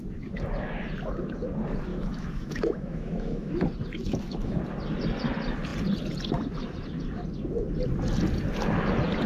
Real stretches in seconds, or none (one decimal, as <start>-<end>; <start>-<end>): 0.0-1.9; 3.5-4.0; 4.6-9.3